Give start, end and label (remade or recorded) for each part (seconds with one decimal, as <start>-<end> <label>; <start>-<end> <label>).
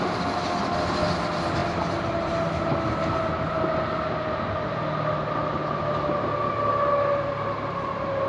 0.0-8.3 recorded